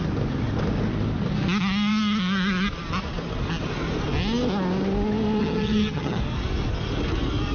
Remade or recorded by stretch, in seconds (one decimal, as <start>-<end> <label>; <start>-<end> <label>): 0.0-5.4 recorded; 5.4-6.2 remade; 6.2-7.5 recorded